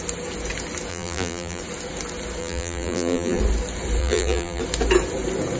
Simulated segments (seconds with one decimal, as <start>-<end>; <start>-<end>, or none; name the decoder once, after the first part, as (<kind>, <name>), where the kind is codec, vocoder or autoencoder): 0.9-1.6 (vocoder, BigVGAN v2); 2.4-3.4; 4.0-4.6